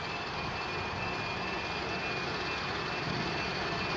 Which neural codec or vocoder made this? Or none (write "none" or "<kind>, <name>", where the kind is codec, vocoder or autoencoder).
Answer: none